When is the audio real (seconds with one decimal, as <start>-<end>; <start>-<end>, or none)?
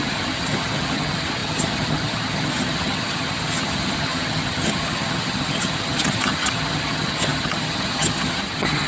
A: none